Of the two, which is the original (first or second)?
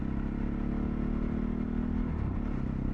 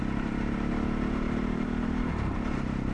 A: first